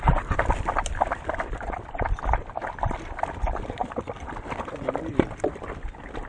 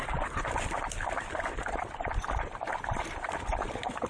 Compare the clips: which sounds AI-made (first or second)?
second